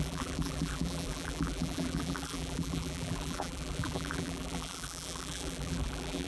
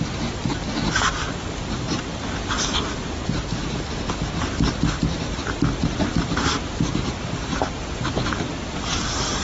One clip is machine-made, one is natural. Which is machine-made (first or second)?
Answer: first